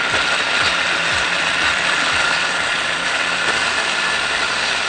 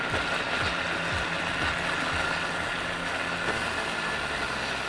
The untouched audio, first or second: second